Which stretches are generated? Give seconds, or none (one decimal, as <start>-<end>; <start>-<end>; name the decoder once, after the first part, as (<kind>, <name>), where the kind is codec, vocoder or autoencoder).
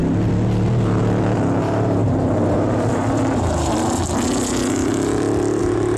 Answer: 1.6-2.0 (vocoder, BigVGAN v2); 5.6-6.0